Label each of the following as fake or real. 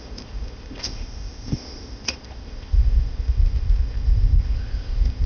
fake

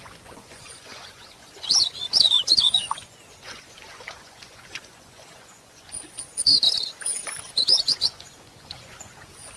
fake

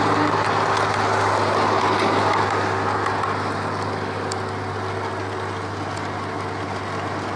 real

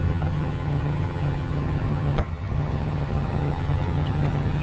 fake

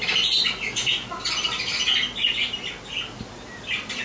real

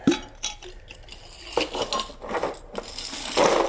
real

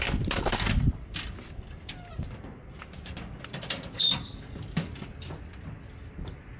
fake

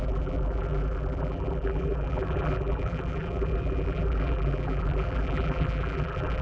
fake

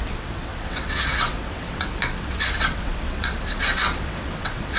fake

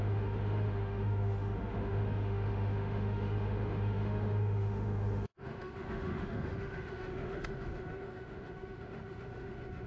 fake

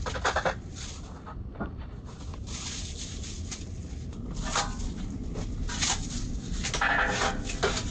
real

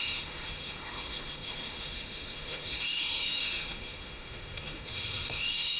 fake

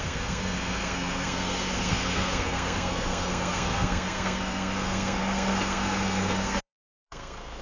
fake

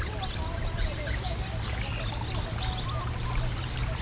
real